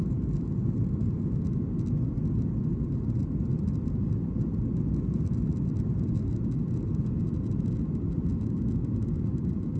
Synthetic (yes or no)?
no